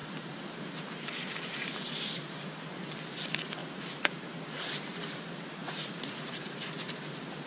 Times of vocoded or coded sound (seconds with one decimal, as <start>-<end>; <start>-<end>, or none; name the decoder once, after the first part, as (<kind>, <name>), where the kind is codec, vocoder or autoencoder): 3.6-4.1 (vocoder, Vocos); 5.6-6.9